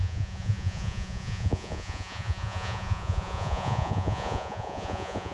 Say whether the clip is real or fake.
fake